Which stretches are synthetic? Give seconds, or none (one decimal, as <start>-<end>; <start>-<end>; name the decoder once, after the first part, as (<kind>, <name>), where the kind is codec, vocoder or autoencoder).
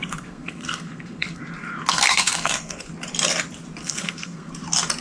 0.0-1.4 (codec, SNAC); 1.9-2.9; 3.8-4.5